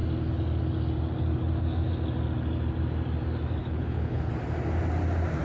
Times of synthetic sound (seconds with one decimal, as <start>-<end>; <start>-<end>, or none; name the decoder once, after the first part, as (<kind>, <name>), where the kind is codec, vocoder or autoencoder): 3.6-4.3 (codec, HILCodec)